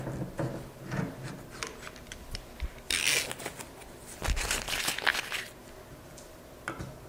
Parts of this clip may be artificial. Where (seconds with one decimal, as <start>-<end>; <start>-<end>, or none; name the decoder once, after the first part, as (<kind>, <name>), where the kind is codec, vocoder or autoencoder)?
none